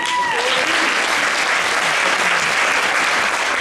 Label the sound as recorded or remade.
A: recorded